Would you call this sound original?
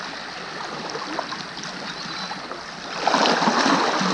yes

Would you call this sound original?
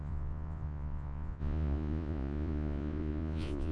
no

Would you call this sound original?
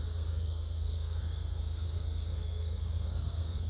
no